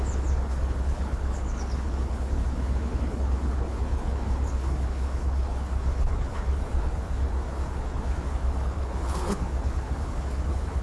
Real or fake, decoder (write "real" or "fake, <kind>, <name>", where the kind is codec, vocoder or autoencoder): fake, codec, HILCodec